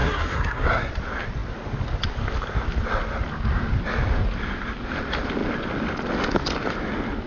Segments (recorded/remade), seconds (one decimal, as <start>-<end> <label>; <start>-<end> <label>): 0.0-0.9 remade; 0.9-7.3 recorded